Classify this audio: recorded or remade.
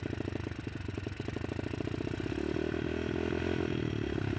recorded